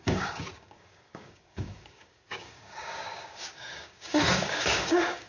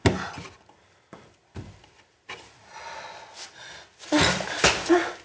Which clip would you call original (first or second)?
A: second